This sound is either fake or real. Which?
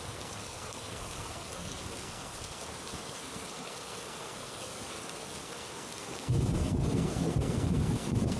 fake